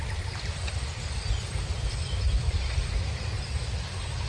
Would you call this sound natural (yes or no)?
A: no